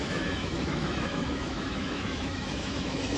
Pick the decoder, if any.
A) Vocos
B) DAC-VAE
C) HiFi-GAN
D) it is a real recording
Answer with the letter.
B